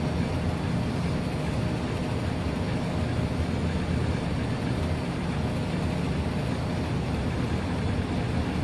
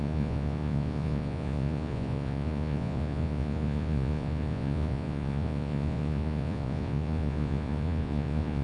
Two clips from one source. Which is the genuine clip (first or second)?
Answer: first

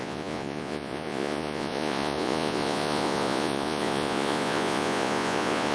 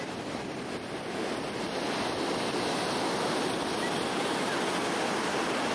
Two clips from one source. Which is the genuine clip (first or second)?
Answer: second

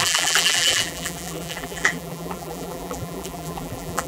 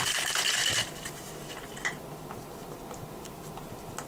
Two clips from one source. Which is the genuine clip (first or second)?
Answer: second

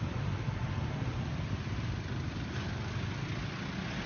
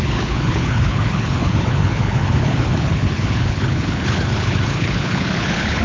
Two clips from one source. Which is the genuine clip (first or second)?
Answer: first